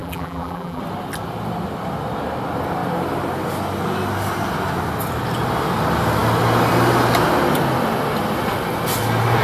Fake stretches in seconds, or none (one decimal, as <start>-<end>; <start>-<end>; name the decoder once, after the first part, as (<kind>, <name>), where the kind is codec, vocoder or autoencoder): 0.0-0.8 (vocoder, BigVGAN v2)